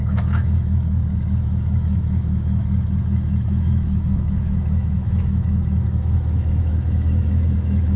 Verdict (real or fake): fake